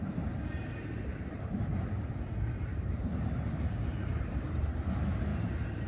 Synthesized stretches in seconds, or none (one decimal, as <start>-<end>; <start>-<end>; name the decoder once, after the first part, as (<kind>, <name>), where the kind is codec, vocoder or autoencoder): 1.1-2.1 (vocoder, BigVGAN v2); 2.7-4.7; 5.3-5.9